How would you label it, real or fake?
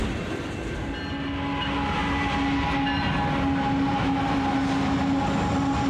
real